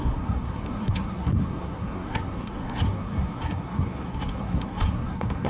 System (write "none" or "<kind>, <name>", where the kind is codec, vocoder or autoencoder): codec, SNAC